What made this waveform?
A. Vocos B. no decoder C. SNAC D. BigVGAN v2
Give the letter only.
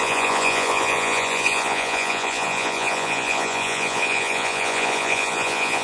A